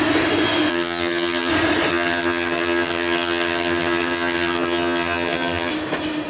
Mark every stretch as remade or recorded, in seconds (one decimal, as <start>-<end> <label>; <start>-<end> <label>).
0.0-0.7 recorded; 0.7-1.5 remade; 1.5-1.9 recorded; 1.9-5.7 remade; 5.7-6.3 recorded